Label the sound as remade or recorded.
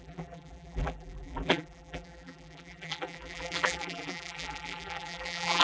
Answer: remade